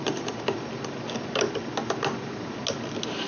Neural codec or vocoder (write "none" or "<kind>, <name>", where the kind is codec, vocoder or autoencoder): none